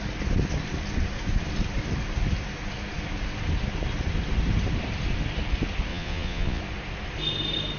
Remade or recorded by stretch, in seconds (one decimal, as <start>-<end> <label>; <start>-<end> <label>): 0.0-5.9 recorded; 5.9-6.6 remade; 6.6-7.8 recorded